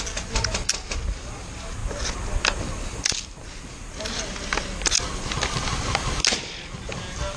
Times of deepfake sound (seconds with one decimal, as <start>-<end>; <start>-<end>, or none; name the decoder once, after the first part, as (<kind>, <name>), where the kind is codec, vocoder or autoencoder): none